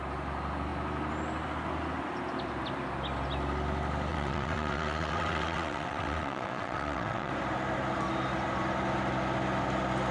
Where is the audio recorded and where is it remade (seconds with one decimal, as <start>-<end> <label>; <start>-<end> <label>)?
0.0-4.1 recorded; 4.1-7.3 remade; 7.3-10.1 recorded